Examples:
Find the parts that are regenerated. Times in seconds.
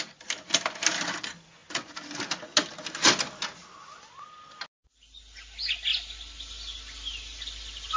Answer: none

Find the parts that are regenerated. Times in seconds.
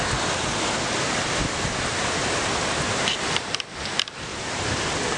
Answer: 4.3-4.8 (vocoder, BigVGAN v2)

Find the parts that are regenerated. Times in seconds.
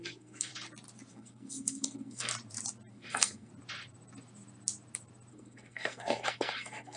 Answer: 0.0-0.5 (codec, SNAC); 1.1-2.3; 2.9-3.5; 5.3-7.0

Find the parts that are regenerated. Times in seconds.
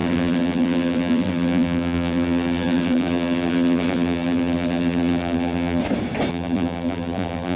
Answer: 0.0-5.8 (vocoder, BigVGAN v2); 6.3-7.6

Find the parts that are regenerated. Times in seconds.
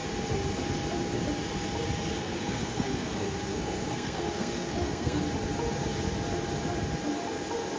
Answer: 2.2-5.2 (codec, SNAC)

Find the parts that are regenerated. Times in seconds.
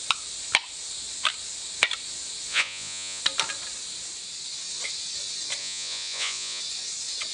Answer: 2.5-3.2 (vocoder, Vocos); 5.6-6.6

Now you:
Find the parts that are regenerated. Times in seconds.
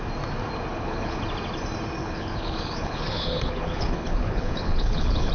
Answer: 0.7-1.2 (codec, HILCodec); 2.0-5.3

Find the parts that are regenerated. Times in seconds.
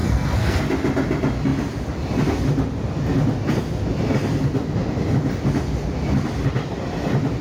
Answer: 0.0-0.6 (codec, SNAC)